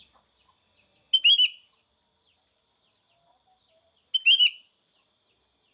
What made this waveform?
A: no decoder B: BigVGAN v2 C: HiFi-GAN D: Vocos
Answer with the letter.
A